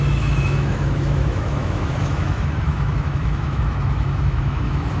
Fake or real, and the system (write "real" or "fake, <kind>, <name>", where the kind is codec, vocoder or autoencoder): fake, autoencoder, DAC-VAE